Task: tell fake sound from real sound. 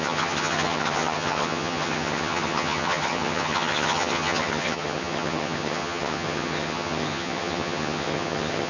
fake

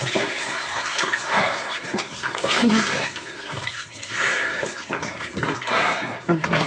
fake